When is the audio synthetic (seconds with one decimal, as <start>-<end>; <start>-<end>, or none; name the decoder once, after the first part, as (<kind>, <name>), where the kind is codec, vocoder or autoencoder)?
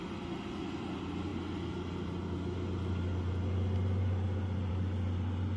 none